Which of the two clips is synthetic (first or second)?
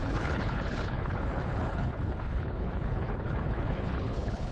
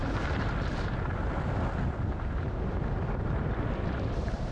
first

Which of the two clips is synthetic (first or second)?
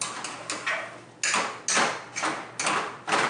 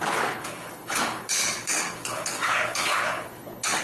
second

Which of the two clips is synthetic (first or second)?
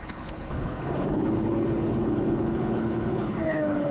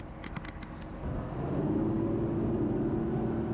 first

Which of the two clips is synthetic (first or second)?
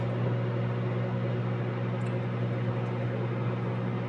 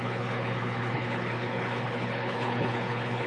second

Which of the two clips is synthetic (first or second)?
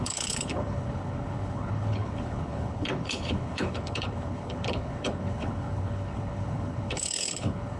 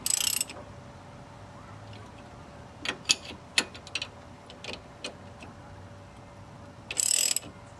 first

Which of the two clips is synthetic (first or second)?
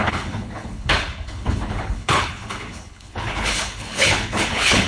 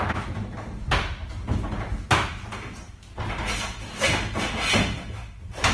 first